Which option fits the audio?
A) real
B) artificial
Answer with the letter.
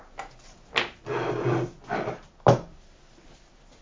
A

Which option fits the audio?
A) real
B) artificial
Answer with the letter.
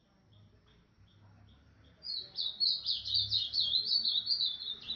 A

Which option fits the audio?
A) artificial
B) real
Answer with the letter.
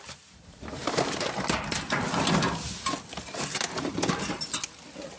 A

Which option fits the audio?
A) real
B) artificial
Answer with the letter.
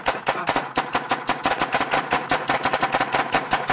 B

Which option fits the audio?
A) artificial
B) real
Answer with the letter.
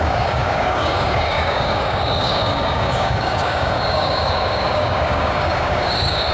A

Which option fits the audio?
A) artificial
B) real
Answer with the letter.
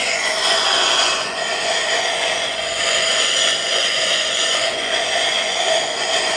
A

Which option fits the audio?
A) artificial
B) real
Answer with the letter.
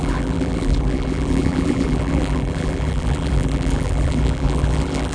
A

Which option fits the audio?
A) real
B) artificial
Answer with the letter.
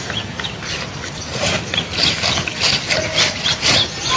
A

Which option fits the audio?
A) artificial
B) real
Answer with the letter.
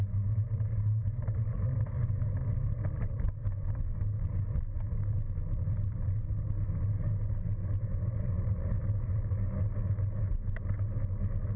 B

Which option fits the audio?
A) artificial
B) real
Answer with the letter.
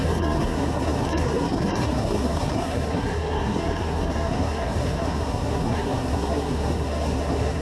A